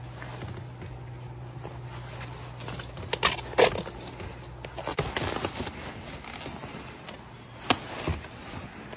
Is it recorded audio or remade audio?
recorded